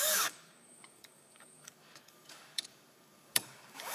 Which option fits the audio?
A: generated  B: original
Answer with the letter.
A